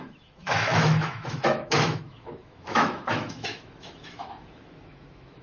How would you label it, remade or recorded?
remade